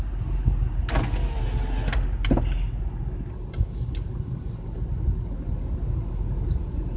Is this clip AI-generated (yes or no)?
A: no